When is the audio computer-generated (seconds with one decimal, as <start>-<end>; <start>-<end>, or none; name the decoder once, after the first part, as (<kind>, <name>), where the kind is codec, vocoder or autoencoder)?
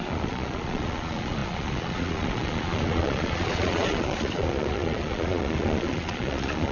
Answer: 0.0-6.7 (vocoder, Vocos)